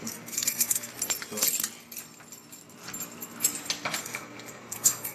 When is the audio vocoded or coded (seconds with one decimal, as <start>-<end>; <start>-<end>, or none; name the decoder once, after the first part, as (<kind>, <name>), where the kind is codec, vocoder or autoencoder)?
0.0-0.9 (codec, SNAC); 4.0-5.1